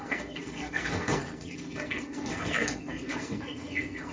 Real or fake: fake